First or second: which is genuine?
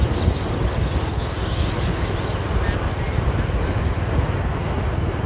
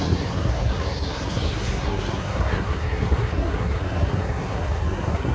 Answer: first